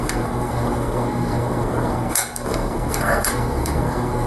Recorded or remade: remade